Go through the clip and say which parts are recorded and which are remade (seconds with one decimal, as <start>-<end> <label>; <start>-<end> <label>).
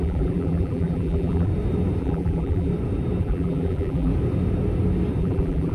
0.0-1.5 remade; 1.5-2.0 recorded; 2.0-2.7 remade; 2.7-3.2 recorded; 3.2-4.1 remade; 4.1-5.2 recorded; 5.2-5.7 remade